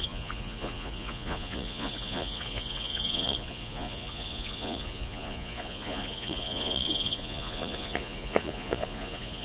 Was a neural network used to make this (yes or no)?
yes